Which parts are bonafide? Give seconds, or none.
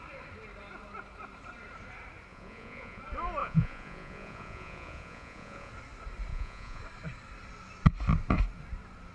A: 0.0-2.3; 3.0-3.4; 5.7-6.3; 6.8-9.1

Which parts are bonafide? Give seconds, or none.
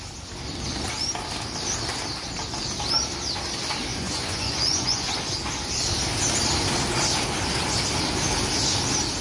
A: 0.0-3.9; 5.1-9.2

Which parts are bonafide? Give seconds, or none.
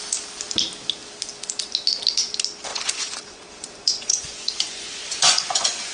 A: 0.0-2.7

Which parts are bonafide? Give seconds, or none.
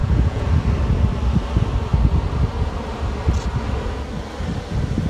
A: 0.5-5.1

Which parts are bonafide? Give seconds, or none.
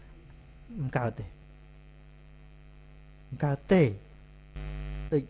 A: 0.9-5.3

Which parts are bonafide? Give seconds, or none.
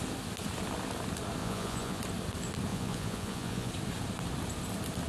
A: 0.0-1.4; 2.0-2.7; 3.7-5.1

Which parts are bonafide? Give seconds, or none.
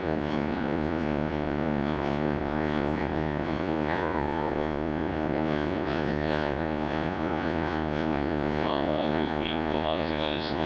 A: none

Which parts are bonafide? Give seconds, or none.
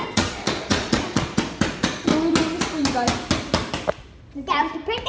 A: 2.1-5.1